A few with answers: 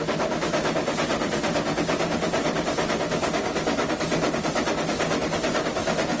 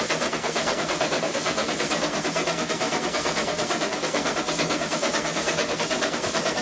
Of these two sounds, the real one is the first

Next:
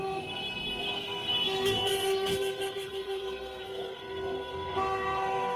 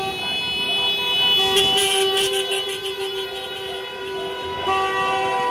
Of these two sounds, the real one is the second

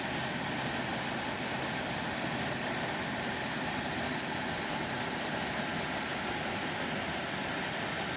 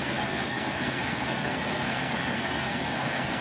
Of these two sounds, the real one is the first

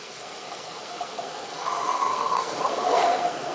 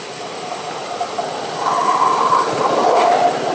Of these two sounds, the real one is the second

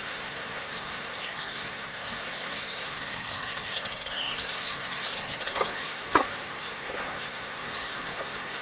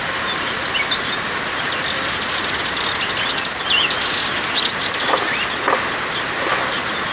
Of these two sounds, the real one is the second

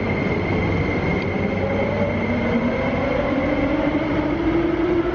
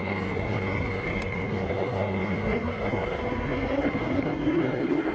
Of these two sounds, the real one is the first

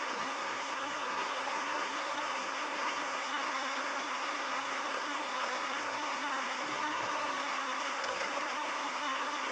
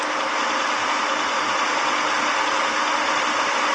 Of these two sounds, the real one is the second